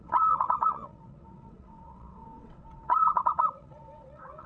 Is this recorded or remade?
remade